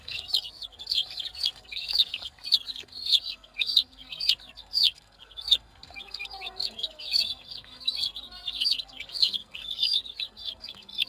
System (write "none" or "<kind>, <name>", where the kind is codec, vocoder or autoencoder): codec, SNAC